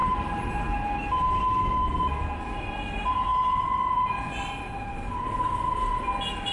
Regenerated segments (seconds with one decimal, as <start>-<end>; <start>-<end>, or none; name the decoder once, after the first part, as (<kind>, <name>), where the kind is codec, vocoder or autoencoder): none